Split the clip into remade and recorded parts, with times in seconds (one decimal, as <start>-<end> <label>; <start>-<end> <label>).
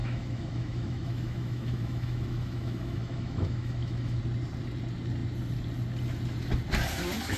0.0-4.2 remade; 4.2-7.4 recorded